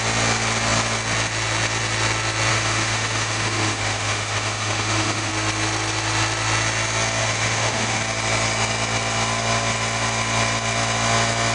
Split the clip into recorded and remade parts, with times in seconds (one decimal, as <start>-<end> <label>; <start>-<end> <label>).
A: 0.0-2.5 recorded; 2.5-5.3 remade; 5.3-7.2 recorded; 7.2-8.0 remade; 8.0-11.5 recorded